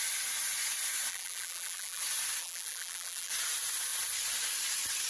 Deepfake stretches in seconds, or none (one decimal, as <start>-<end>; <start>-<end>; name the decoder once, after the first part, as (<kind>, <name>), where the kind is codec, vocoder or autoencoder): 1.1-2.0 (vocoder, BigVGAN v2); 2.4-3.3